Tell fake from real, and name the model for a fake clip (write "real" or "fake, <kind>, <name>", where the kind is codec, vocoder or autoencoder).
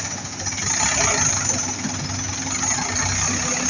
real